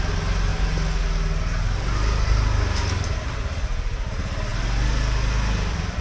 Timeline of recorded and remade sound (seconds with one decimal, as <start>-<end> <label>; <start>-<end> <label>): 0.0-6.0 recorded